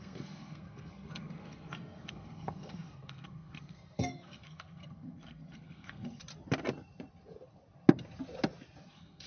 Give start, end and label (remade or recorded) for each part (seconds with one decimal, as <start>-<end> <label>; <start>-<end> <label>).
0.0-6.2 remade; 6.2-8.8 recorded; 8.8-9.3 remade

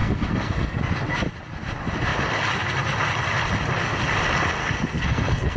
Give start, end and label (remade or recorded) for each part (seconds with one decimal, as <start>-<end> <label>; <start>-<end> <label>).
0.0-0.8 remade; 0.8-4.6 recorded; 4.6-5.6 remade

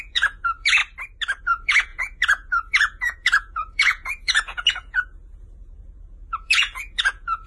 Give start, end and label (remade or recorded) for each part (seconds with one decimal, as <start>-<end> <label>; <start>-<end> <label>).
0.0-0.8 remade; 0.8-1.4 recorded; 1.4-7.5 remade

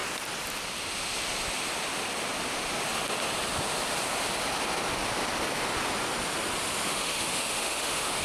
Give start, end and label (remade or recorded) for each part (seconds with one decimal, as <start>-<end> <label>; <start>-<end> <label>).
0.0-6.9 recorded; 6.9-8.2 remade

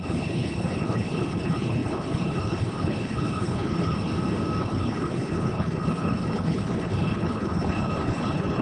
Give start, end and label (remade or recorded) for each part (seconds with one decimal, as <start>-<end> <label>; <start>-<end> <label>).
0.0-4.1 remade; 4.1-4.6 recorded; 4.6-8.6 remade

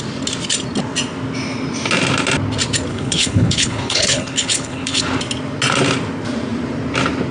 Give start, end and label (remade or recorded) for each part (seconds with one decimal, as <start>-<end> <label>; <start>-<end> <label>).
0.0-2.9 recorded; 2.9-5.0 remade; 5.0-7.3 recorded

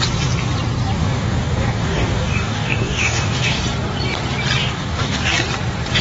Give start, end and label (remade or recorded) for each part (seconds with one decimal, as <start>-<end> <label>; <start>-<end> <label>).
0.0-1.0 recorded; 1.0-3.6 remade; 3.6-4.6 recorded; 4.6-5.2 remade; 5.2-6.0 recorded